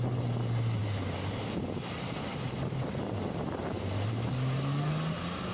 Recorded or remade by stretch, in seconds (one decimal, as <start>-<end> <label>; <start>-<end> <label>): 0.0-5.5 recorded